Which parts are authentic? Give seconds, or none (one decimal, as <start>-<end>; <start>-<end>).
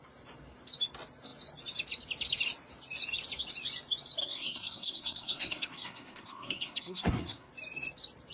0.0-4.2; 7.5-8.3